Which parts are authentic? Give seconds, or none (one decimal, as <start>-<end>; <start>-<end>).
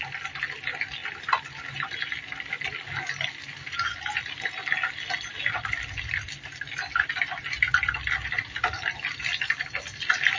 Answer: 0.0-10.4